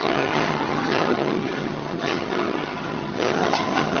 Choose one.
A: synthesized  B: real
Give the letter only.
A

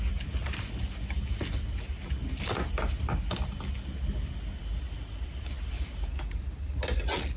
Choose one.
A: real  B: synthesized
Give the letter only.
A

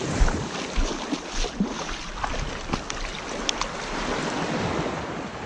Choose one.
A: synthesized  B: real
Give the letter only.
B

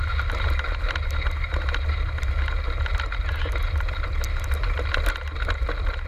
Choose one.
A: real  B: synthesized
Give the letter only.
A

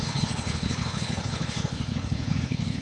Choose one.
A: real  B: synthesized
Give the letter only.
B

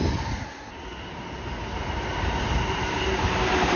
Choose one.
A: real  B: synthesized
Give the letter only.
A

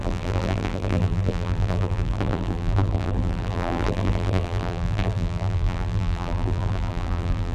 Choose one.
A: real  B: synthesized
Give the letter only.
B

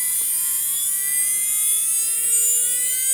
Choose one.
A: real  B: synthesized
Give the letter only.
A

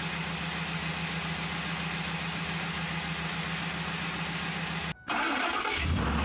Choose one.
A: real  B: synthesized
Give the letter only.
A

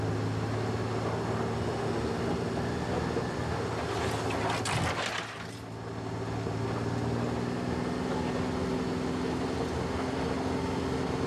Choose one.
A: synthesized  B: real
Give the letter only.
B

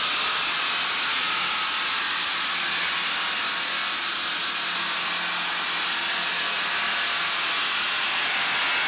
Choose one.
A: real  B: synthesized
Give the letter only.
A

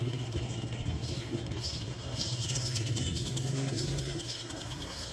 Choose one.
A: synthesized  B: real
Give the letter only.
A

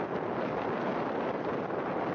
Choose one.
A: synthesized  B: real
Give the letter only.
B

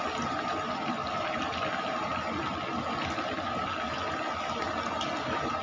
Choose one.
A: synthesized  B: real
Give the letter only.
B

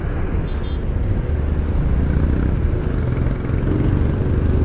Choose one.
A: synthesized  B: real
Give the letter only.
B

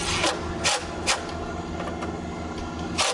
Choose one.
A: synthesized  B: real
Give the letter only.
B